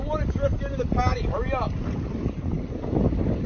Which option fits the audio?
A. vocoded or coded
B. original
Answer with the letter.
B